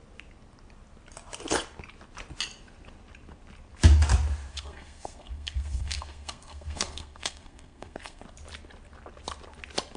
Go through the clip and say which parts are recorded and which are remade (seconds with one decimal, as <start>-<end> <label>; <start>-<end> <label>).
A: 0.0-4.5 recorded; 4.5-8.2 remade; 8.2-10.0 recorded